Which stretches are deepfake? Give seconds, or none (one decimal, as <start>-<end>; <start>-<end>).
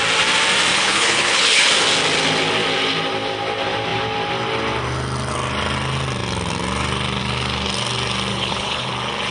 0.7-1.7; 8.3-8.9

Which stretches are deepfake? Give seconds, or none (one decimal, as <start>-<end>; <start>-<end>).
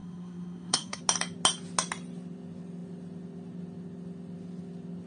0.0-1.0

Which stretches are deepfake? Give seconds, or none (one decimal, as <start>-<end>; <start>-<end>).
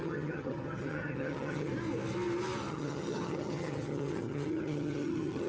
0.0-1.7; 2.7-5.5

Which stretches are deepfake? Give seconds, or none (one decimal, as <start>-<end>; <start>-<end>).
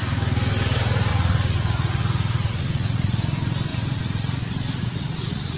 1.1-3.2; 3.7-5.6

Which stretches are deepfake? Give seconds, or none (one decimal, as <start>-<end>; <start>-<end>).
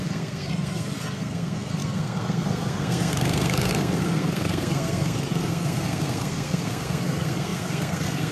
0.0-8.3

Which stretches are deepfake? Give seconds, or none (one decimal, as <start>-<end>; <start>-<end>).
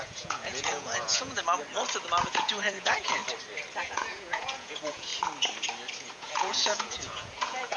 0.0-1.4; 2.2-3.2; 3.8-5.1; 6.0-7.8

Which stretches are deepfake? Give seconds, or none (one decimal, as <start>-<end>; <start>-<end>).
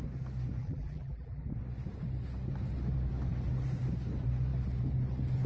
0.6-1.5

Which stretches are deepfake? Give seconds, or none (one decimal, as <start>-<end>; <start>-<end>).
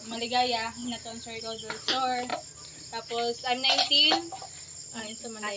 none